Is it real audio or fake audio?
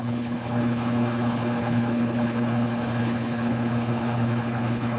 fake